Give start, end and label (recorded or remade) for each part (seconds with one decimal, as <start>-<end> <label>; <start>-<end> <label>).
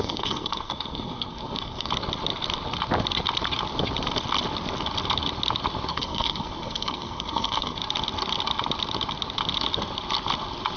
0.0-1.9 remade; 1.9-5.9 recorded; 5.9-7.8 remade; 7.8-10.8 recorded